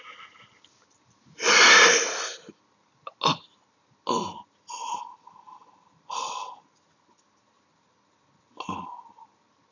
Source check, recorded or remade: recorded